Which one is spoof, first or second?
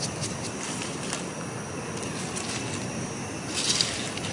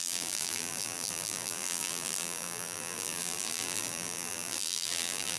second